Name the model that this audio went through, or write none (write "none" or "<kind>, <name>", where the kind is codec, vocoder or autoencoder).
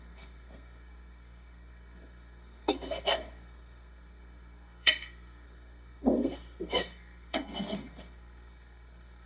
codec, SNAC